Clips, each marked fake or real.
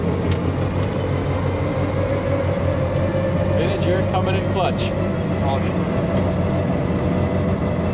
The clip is real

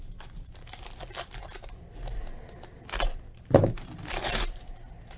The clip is real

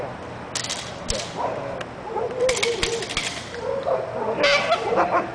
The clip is real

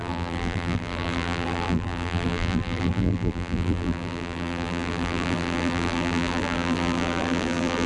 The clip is fake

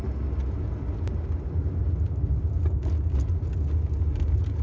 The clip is real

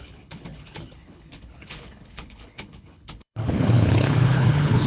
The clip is fake